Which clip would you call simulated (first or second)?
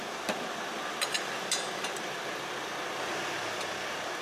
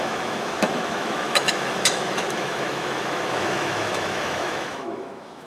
second